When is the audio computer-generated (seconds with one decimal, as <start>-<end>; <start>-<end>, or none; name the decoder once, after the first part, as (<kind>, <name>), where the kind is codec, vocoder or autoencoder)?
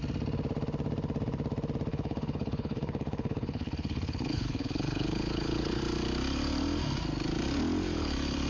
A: 1.9-5.8 (codec, HILCodec)